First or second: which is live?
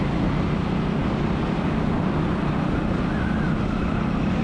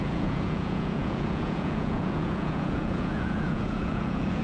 first